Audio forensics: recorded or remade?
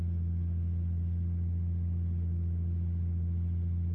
recorded